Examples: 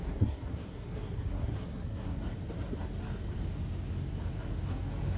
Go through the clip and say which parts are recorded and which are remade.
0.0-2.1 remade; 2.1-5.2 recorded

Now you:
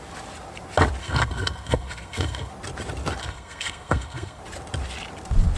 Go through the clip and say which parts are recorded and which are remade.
0.0-1.0 recorded; 1.0-2.5 remade; 2.5-3.2 recorded; 3.2-4.4 remade; 4.4-5.6 recorded

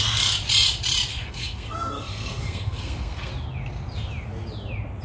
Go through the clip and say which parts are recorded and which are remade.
0.0-1.1 recorded; 1.1-3.3 remade; 3.3-5.0 recorded